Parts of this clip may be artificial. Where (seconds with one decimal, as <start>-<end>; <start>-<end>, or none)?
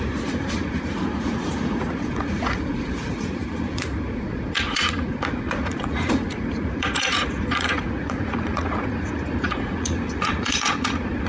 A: 0.0-11.3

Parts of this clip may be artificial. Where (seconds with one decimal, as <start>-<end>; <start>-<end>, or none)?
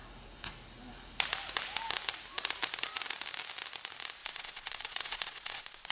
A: 4.2-5.9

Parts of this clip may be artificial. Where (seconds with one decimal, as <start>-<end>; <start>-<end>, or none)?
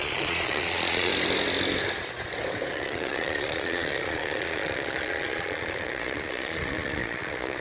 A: 0.0-1.1; 2.7-7.6